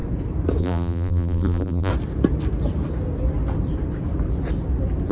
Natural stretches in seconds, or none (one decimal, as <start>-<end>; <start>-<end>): 0.0-0.6; 1.9-5.1